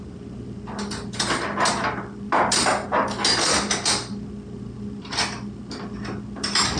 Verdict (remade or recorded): recorded